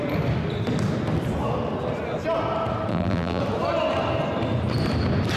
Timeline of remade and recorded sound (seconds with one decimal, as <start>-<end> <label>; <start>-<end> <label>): 0.0-2.9 recorded; 2.9-3.4 remade; 3.4-5.4 recorded